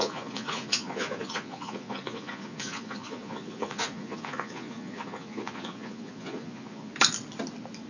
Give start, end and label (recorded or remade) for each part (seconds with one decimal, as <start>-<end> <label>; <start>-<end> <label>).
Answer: 0.0-6.9 remade; 6.9-7.9 recorded